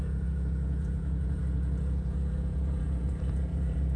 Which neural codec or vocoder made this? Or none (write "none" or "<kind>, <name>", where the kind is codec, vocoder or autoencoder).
vocoder, Vocos